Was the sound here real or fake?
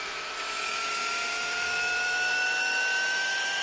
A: fake